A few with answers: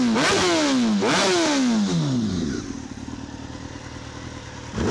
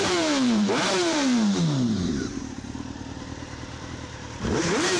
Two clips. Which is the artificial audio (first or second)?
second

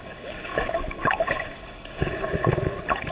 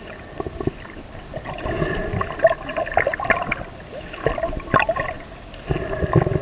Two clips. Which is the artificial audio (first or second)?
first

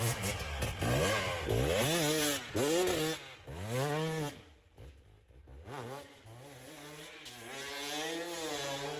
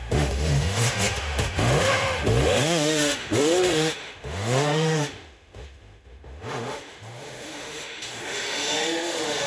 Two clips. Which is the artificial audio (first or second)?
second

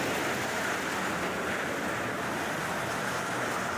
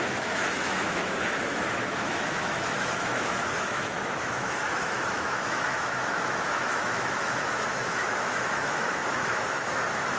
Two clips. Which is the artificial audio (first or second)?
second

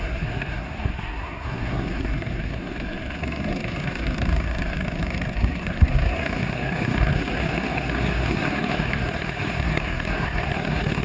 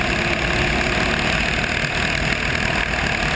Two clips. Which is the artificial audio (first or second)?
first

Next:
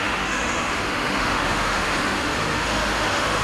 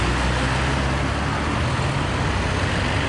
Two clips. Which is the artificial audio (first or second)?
first